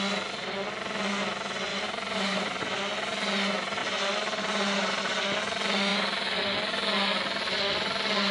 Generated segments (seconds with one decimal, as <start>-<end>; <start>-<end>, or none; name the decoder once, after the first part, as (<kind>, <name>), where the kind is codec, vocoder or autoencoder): 1.7-2.6 (vocoder, BigVGAN v2); 3.8-5.0